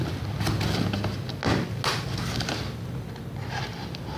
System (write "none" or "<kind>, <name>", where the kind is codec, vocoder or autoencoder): none